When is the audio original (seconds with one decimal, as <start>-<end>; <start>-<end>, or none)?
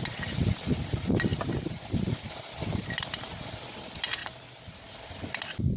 0.0-5.8